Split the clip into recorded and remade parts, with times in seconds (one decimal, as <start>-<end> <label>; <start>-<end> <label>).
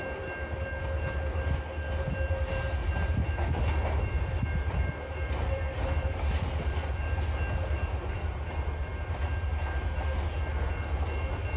0.0-2.8 recorded; 2.8-6.3 remade; 6.3-7.9 recorded; 7.9-8.5 remade; 8.5-8.9 recorded; 8.9-9.5 remade; 9.5-11.6 recorded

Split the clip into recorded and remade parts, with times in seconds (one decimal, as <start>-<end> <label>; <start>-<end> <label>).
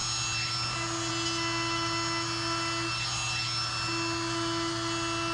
0.0-5.3 recorded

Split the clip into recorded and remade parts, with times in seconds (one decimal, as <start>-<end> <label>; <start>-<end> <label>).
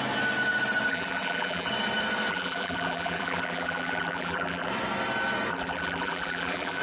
0.0-0.9 recorded; 0.9-1.7 remade; 1.7-2.3 recorded; 2.3-4.7 remade; 4.7-5.5 recorded; 5.5-6.8 remade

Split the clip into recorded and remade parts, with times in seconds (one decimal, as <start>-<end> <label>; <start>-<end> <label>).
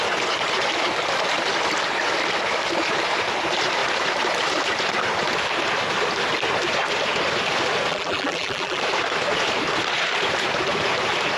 0.0-7.9 recorded; 7.9-8.8 remade; 8.8-11.4 recorded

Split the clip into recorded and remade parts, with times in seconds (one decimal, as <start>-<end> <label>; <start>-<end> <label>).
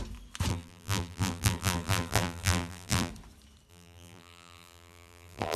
0.0-0.5 recorded; 0.5-3.1 remade; 3.1-3.7 recorded; 3.7-5.6 remade